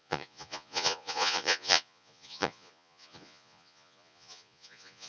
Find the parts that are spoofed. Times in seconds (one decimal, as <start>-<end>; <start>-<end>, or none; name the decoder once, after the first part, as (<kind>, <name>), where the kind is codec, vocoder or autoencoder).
0.0-5.1 (vocoder, Vocos)